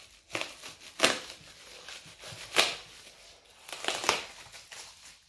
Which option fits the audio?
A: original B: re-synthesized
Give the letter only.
A